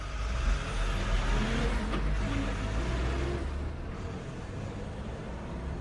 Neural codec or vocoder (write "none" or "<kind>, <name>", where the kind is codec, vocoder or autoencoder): none